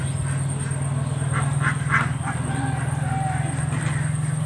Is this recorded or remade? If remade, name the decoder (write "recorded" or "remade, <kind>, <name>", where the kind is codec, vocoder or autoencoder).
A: recorded